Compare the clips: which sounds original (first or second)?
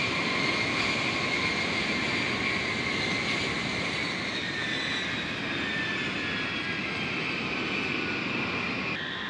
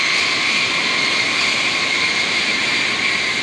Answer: first